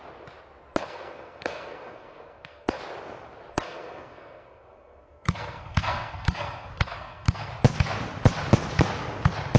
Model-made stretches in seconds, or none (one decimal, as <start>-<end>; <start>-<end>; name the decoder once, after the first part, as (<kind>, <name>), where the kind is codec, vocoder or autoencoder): 0.8-2.8 (codec, SNAC); 3.5-7.5